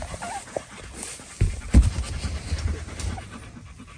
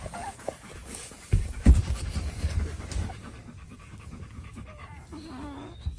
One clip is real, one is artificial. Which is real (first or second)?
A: first